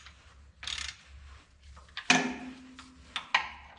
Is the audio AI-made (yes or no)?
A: no